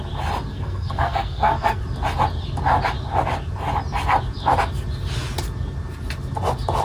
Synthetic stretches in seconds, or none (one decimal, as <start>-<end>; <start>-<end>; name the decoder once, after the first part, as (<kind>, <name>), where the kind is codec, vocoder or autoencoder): 0.5-1.8 (codec, SNAC)